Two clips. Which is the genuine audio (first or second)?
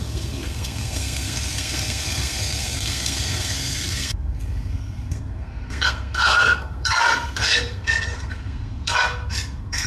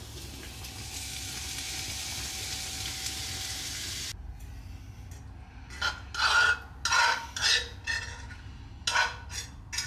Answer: second